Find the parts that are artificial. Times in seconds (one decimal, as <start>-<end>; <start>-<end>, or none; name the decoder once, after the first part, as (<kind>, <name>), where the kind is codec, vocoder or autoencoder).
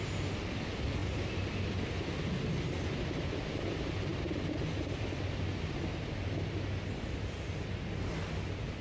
none